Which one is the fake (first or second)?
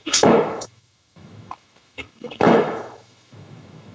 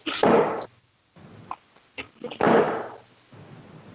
first